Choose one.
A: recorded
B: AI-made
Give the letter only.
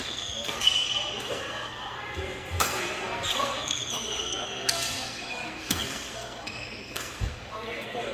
B